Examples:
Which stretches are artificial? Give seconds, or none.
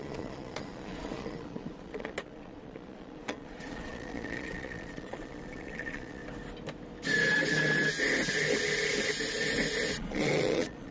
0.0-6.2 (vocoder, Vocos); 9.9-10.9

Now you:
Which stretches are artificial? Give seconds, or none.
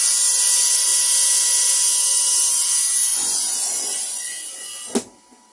3.1-4.7 (vocoder, Vocos)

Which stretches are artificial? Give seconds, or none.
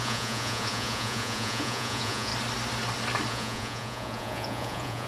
0.0-2.3 (vocoder, Vocos); 3.3-5.1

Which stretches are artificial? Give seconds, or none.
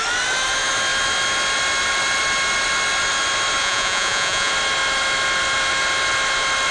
3.6-4.5 (vocoder, Vocos)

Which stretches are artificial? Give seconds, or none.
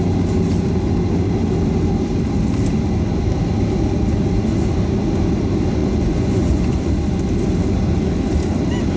5.8-6.9 (vocoder, Vocos)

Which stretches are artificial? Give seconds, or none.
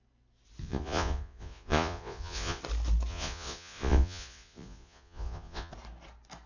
0.6-2.6 (vocoder, Vocos); 3.1-5.7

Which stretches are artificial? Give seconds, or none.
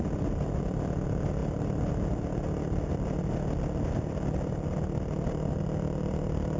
none